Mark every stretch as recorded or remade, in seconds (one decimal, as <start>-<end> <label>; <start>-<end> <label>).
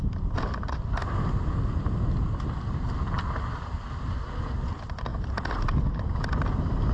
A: 0.0-6.9 recorded